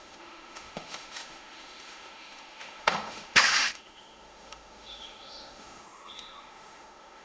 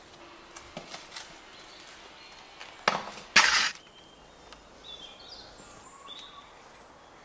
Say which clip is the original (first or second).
second